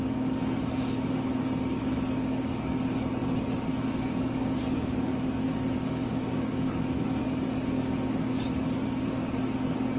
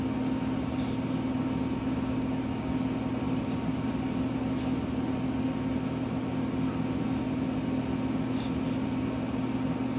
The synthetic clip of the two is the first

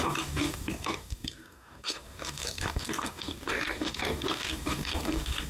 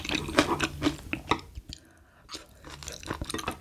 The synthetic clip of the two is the first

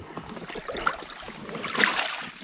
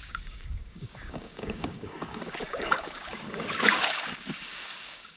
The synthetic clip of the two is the second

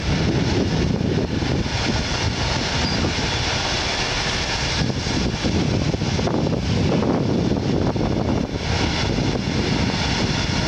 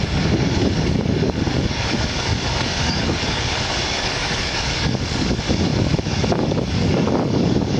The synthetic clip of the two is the second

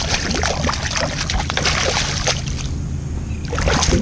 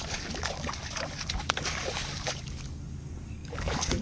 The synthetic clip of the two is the second